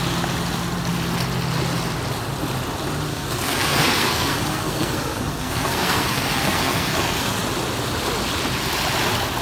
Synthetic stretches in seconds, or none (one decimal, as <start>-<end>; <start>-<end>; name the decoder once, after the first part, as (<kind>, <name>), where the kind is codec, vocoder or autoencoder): 3.1-7.3 (codec, SNAC)